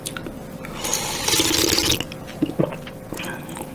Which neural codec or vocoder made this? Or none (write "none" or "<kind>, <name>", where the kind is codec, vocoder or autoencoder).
none